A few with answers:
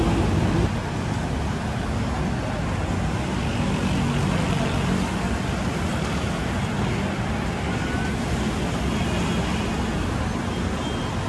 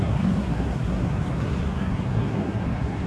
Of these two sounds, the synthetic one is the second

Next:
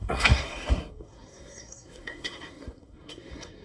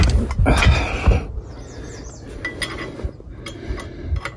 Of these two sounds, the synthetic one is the first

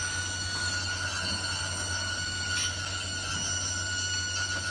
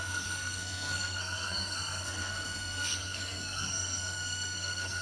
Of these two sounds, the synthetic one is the second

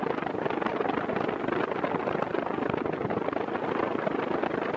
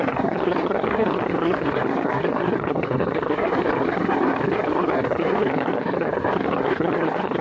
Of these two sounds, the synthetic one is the second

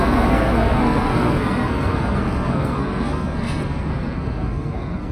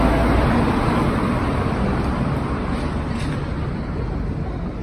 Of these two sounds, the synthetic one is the first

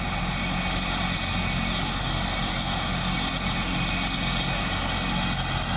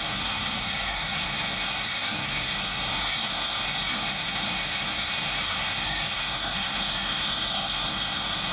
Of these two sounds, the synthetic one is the second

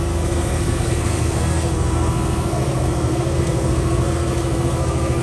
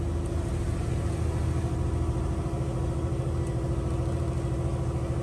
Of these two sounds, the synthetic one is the first